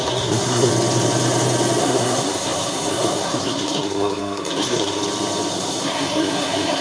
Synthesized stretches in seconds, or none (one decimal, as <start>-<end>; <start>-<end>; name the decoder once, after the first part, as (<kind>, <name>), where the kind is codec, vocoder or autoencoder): 0.0-0.7 (codec, SNAC); 1.8-5.0; 5.5-6.8